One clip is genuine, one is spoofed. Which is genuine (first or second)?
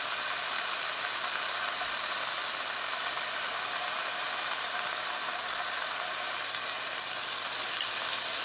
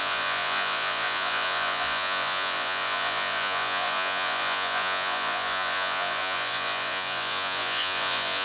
first